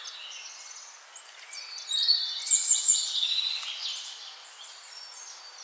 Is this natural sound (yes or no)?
yes